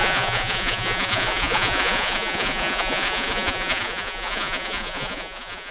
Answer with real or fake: fake